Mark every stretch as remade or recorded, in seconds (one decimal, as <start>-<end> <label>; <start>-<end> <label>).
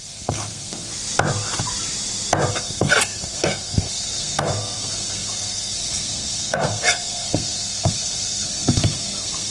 0.0-0.9 remade; 0.9-2.5 recorded; 2.5-9.5 remade